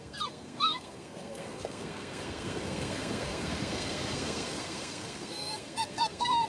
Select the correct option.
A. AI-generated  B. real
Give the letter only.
A